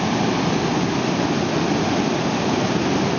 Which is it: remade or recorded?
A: recorded